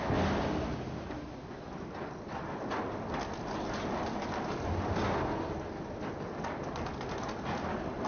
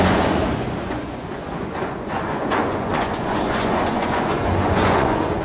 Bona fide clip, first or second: first